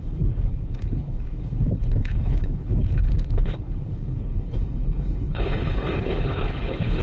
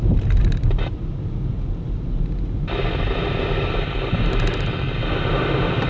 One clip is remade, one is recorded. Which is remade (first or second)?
first